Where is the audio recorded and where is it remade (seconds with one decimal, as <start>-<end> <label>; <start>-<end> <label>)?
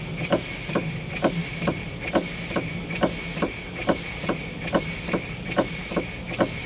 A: 0.0-6.7 recorded